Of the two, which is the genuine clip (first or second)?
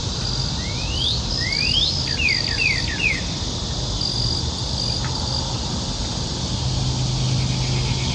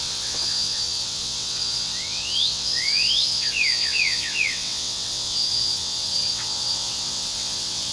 first